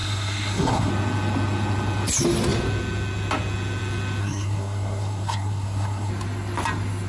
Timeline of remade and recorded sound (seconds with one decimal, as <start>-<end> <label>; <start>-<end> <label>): 0.0-0.9 remade; 0.9-4.2 recorded; 4.2-6.1 remade; 6.1-7.1 recorded